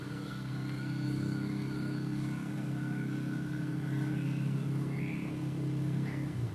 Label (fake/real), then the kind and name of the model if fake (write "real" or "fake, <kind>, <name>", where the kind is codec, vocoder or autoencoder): fake, codec, SNAC